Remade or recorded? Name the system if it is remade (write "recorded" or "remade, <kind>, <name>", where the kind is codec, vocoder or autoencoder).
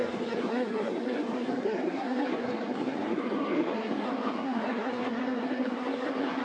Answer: remade, codec, SNAC